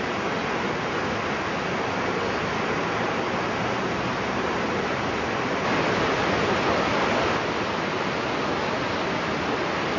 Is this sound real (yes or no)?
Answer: yes